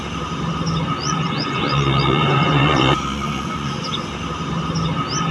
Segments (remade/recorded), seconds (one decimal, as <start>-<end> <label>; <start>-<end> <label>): 0.0-1.0 recorded; 1.0-3.8 remade; 3.8-5.3 recorded